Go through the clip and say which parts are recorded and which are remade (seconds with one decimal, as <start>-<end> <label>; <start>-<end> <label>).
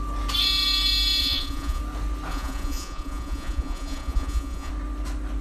0.0-1.2 recorded; 1.2-1.8 remade; 1.8-2.3 recorded; 2.3-4.7 remade; 4.7-5.4 recorded